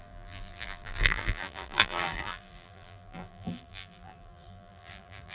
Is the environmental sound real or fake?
fake